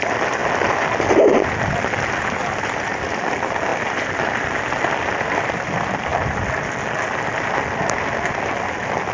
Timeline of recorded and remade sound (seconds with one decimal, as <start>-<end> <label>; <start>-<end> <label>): 0.0-3.7 recorded; 3.7-5.6 remade; 5.6-6.1 recorded; 6.1-6.6 remade; 6.6-9.1 recorded